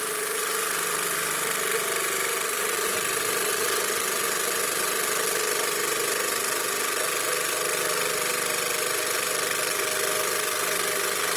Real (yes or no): yes